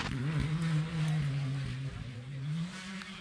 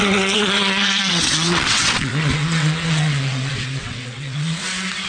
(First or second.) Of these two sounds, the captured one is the first